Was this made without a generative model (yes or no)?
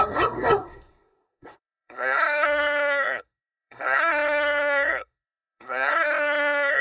no